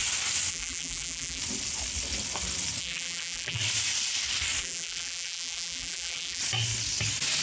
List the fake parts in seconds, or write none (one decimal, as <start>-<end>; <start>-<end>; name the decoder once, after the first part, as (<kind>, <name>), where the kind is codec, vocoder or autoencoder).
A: 0.5-1.4 (vocoder, BigVGAN v2); 2.8-3.6; 4.6-6.4